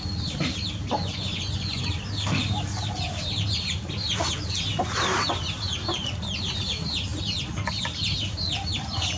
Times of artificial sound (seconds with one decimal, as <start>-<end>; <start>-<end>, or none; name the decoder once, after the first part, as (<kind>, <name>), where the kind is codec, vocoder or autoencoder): 1.0-1.9 (vocoder, Vocos)